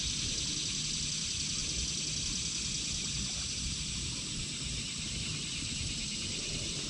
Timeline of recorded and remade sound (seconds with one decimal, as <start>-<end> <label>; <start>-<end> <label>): 0.0-6.9 recorded